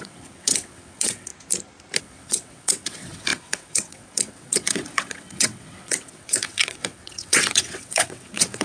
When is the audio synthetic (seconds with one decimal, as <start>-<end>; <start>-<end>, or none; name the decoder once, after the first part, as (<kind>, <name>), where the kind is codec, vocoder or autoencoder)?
0.0-1.3 (vocoder, WaveNeXt); 2.0-8.6